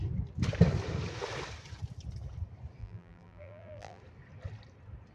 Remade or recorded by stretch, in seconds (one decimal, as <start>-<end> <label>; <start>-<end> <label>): 0.0-2.8 recorded; 2.8-4.0 remade; 4.0-5.1 recorded